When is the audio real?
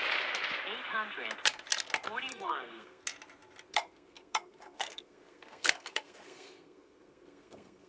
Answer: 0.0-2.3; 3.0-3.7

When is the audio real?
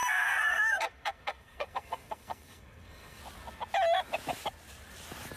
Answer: 3.2-5.4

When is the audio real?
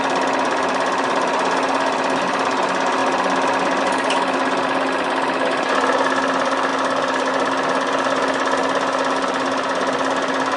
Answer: 0.0-10.6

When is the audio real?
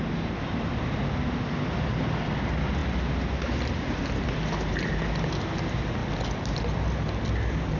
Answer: 0.0-7.8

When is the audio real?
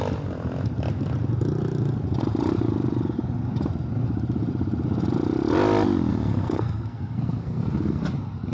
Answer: 0.0-6.1; 8.0-8.5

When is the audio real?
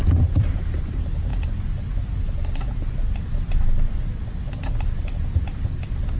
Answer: 1.3-5.0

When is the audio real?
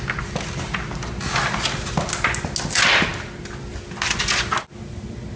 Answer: 0.0-5.4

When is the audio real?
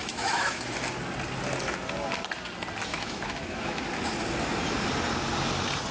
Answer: 0.6-2.9; 3.9-5.9